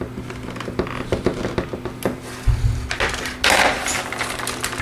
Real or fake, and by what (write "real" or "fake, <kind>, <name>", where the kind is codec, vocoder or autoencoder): real